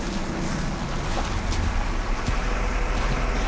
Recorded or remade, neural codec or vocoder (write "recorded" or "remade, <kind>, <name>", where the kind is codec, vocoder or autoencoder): recorded